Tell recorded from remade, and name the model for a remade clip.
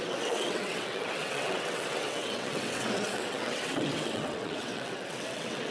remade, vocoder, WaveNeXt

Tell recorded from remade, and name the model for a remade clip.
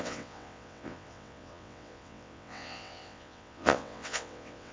remade, vocoder, WaveNeXt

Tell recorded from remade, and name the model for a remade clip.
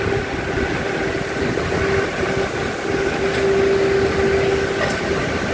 recorded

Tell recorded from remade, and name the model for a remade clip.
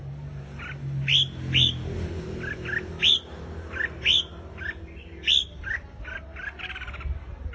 recorded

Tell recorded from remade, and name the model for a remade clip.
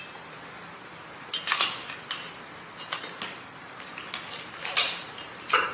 recorded